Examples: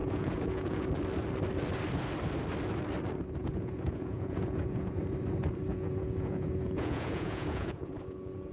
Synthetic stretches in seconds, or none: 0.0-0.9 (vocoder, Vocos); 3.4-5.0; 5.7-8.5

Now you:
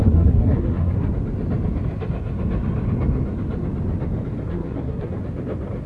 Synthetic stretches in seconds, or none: 0.0-1.1 (codec, SNAC); 4.5-5.1

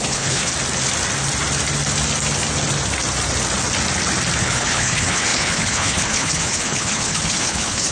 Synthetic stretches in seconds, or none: 0.0-0.5 (codec, HILCodec); 4.4-7.9